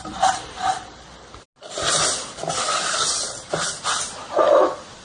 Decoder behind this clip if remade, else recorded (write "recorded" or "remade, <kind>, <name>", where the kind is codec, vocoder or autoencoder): recorded